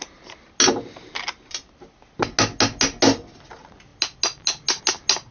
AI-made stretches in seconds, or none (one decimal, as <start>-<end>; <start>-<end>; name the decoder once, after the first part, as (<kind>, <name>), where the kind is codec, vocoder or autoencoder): none